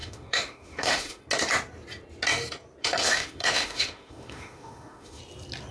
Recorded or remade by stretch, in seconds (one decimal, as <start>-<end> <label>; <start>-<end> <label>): 0.0-1.2 remade; 1.2-2.8 recorded; 2.8-5.2 remade; 5.2-5.7 recorded